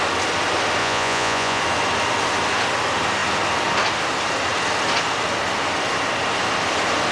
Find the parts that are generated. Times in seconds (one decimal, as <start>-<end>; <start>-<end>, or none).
0.8-1.6